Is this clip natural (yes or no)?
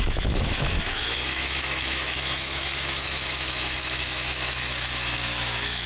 no